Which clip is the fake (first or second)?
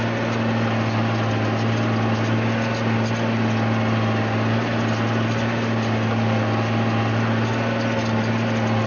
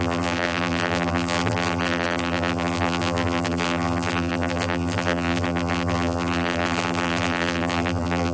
second